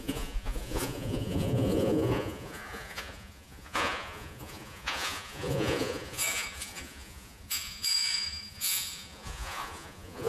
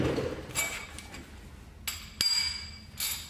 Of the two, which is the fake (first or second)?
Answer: first